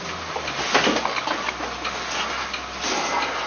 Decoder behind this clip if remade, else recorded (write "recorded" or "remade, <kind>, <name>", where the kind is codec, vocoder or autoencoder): recorded